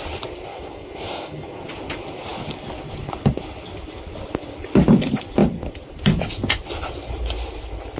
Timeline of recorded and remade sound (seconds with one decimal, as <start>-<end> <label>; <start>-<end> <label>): 0.0-0.5 recorded; 0.5-1.6 remade; 1.6-8.0 recorded